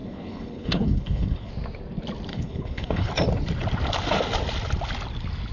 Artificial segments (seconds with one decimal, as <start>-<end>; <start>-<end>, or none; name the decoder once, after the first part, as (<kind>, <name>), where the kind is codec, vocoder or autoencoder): 0.0-1.5 (codec, HILCodec); 2.3-3.1